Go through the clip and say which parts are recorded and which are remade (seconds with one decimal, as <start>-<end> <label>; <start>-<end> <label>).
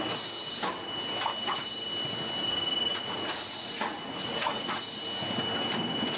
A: 0.0-2.9 recorded; 2.9-4.8 remade; 4.8-6.2 recorded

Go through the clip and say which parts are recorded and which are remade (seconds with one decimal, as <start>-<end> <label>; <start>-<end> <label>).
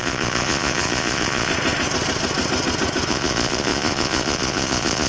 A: 0.0-1.5 remade; 1.5-3.1 recorded; 3.1-5.1 remade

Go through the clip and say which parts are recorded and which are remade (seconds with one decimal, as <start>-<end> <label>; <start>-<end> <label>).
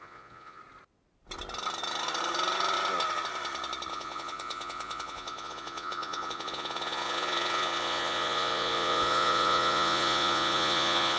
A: 0.0-0.6 remade; 0.6-3.9 recorded; 3.9-11.2 remade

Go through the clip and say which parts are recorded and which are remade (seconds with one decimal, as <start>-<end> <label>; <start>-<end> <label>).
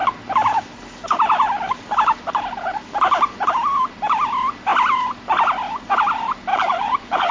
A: 0.0-6.5 recorded; 6.5-7.3 remade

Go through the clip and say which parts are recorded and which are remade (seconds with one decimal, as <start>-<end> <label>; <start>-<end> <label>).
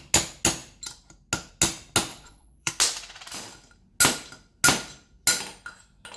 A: 0.0-2.1 recorded; 2.1-2.7 remade; 2.7-6.2 recorded